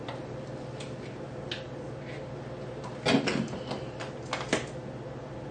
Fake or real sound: real